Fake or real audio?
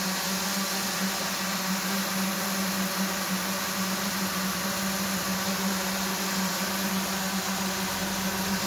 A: real